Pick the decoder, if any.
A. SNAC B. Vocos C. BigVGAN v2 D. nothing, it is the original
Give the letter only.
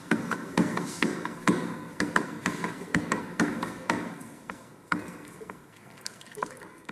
A